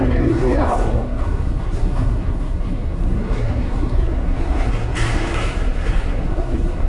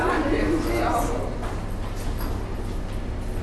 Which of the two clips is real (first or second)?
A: second